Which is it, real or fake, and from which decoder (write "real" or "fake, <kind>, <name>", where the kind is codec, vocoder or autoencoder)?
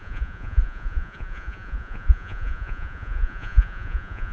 fake, vocoder, Vocos